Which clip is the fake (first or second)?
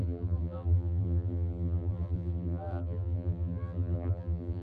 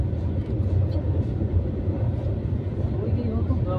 first